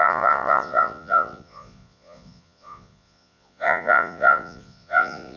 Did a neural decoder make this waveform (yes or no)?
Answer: yes